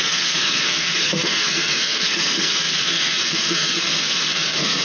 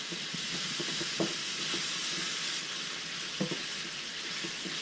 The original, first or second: second